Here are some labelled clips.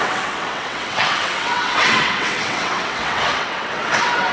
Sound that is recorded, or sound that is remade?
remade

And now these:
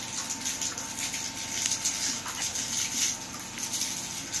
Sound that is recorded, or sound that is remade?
recorded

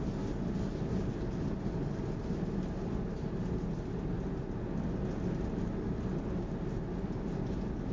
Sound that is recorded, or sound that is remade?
recorded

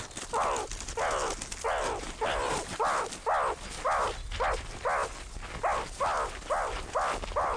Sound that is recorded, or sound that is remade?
recorded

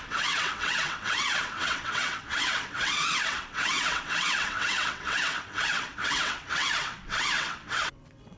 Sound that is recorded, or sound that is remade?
remade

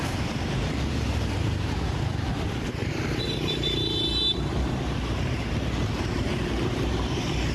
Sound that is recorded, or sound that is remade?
remade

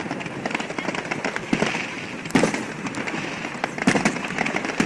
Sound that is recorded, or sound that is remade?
recorded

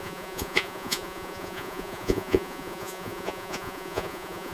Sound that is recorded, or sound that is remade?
remade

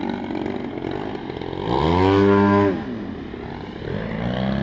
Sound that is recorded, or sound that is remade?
recorded